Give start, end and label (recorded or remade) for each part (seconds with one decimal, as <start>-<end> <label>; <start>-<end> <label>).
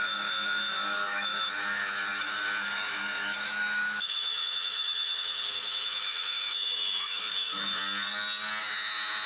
0.0-7.8 remade; 7.8-8.6 recorded; 8.6-9.3 remade